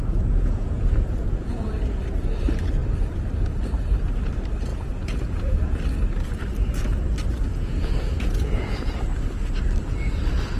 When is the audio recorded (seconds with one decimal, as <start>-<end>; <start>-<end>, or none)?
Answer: 1.7-4.7; 5.8-7.5; 9.0-10.6

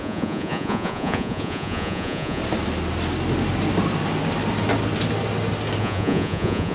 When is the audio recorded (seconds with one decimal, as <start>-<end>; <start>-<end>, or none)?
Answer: 2.4-5.8

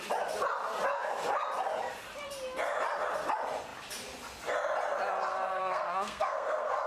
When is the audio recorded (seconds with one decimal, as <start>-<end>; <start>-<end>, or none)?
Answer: 0.0-5.3

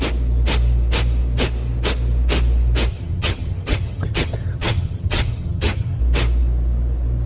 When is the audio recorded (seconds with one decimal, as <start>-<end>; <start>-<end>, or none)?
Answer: 0.0-2.9; 6.0-7.3

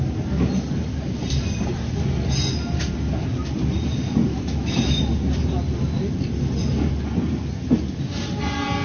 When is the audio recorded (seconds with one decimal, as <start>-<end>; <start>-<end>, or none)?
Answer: 0.0-4.3; 5.0-8.8